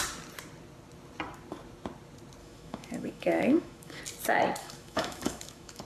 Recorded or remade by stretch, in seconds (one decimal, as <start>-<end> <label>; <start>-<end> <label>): 0.0-2.4 recorded; 2.4-4.0 remade; 4.0-4.6 recorded; 4.6-5.8 remade